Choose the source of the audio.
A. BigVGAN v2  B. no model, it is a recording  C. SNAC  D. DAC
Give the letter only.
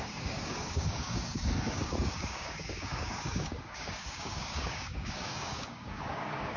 D